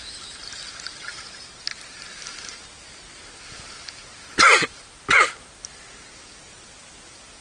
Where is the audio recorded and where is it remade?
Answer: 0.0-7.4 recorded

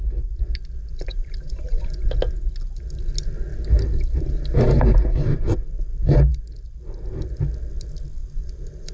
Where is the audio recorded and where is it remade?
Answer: 0.0-0.9 recorded; 0.9-1.8 remade; 1.8-8.2 recorded; 8.2-8.9 remade

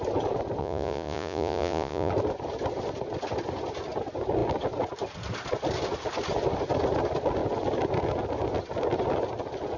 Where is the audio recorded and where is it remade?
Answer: 0.0-0.6 recorded; 0.6-2.1 remade; 2.1-9.8 recorded